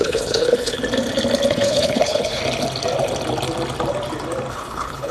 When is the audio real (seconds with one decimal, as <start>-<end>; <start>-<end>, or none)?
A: 0.8-1.5; 2.4-4.5